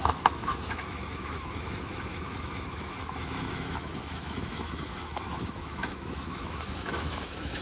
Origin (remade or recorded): remade